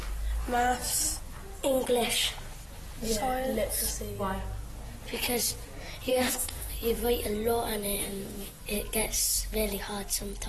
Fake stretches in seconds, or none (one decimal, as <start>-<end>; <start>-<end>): 6.1-6.7; 8.0-8.6